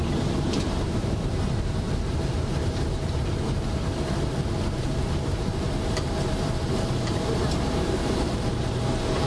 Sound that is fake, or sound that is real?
fake